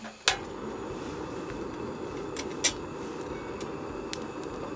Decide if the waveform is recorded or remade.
recorded